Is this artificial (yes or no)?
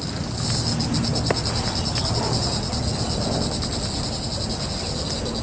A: no